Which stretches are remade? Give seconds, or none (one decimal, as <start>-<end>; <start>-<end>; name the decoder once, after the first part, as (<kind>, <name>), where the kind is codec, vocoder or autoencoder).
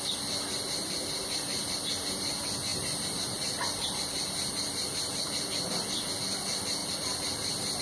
2.7-5.3 (vocoder, BigVGAN v2); 6.8-7.8